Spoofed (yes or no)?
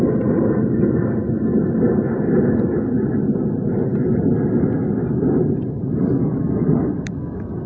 no